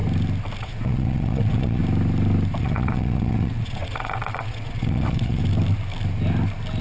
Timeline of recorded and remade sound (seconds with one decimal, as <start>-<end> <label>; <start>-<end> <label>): 0.0-0.6 recorded; 0.6-1.8 remade; 1.8-2.6 recorded; 2.6-5.4 remade; 5.4-6.8 recorded